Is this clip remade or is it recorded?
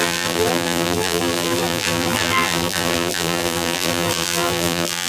remade